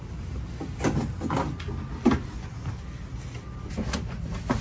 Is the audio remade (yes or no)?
no